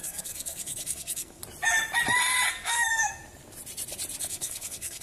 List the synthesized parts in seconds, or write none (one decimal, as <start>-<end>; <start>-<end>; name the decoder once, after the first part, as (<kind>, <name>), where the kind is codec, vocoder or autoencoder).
0.0-1.4 (codec, SNAC); 2.5-3.2; 4.2-5.0